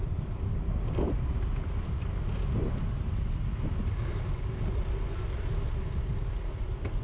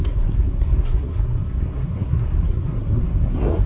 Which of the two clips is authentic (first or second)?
first